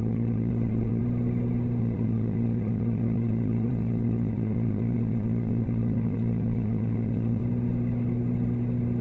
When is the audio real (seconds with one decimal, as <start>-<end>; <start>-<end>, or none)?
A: 1.0-1.8; 7.4-9.0